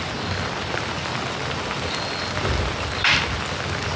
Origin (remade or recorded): recorded